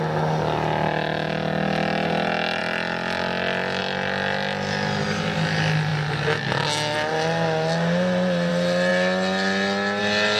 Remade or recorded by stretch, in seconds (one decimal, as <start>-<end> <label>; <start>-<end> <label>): 0.0-10.4 recorded